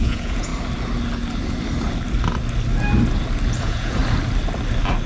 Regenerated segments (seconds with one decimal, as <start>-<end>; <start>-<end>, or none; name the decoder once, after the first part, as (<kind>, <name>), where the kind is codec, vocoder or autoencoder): 0.0-0.5 (vocoder, Vocos); 3.6-4.0